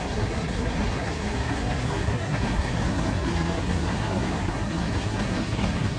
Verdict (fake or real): fake